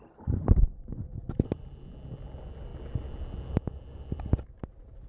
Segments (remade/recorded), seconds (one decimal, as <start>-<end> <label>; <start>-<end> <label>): 0.0-5.1 recorded